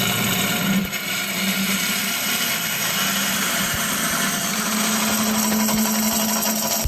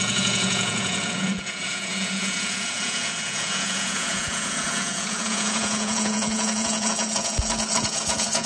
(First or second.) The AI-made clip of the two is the second